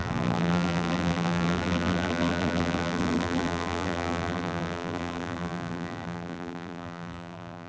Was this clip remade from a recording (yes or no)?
yes